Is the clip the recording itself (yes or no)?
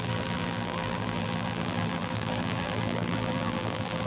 no